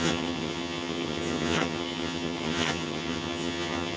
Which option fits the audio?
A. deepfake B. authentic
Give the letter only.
A